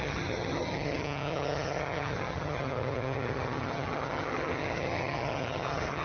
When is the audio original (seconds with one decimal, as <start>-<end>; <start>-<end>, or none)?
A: none

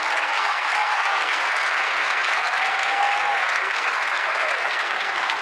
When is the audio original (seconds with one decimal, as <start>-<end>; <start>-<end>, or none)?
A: none

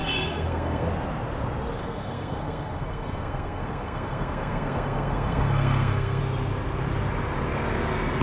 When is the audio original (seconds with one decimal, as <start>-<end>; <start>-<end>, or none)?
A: 0.9-1.8; 6.2-8.2

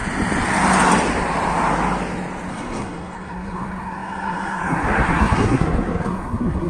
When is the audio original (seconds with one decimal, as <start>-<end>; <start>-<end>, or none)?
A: 0.0-2.5

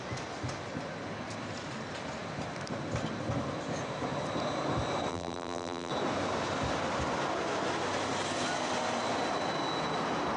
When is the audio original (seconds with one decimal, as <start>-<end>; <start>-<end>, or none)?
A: 0.0-5.1; 5.9-10.4